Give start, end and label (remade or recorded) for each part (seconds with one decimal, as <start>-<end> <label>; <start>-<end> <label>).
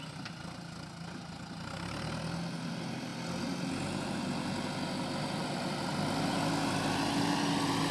0.0-7.9 recorded